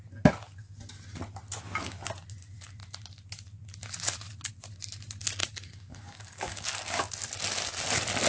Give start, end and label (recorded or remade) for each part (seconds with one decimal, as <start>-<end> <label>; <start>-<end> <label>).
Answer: 0.0-5.4 recorded; 5.4-7.1 remade; 7.1-8.3 recorded